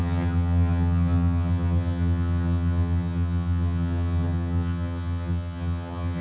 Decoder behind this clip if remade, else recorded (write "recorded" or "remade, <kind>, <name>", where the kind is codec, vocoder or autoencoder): remade, vocoder, HiFi-GAN